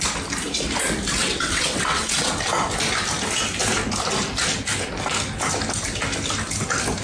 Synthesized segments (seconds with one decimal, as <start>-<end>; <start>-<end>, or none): 1.2-2.3